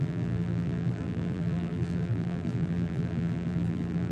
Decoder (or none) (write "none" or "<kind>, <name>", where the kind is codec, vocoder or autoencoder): vocoder, BigVGAN v2